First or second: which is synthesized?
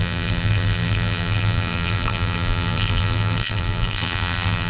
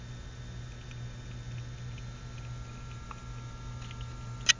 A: first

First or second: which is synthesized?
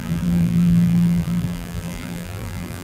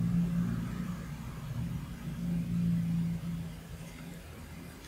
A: first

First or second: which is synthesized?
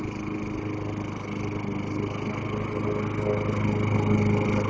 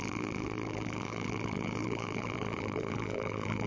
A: second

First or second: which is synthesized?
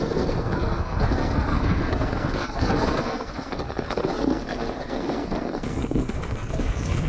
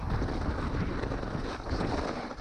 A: first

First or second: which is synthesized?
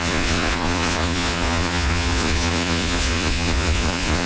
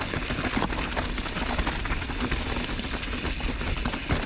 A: first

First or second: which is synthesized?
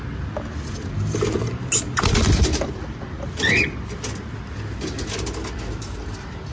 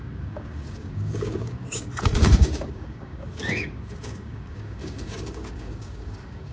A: second